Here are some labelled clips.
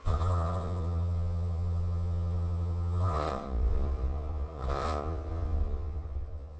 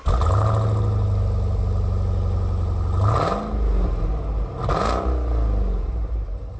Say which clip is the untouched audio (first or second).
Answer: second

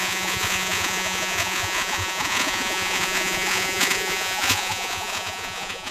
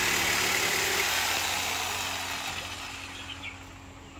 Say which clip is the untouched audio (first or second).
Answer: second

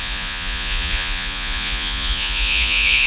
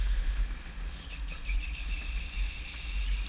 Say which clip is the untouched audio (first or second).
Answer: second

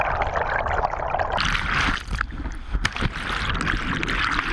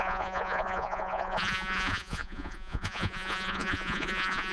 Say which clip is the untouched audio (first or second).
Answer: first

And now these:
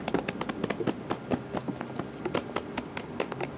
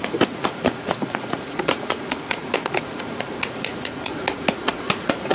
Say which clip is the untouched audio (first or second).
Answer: first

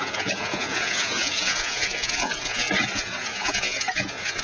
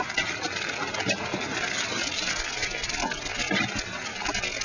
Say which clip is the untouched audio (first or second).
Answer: second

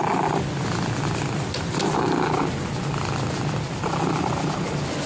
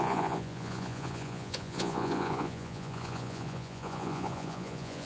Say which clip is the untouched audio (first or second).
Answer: first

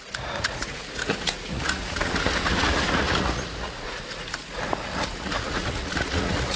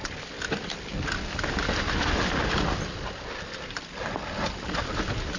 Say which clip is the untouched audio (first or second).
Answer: second